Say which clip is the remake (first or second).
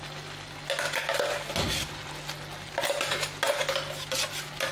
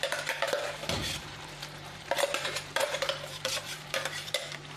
second